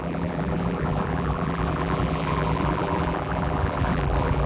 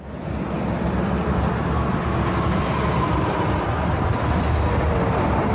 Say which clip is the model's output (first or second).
first